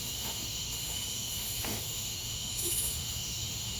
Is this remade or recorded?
remade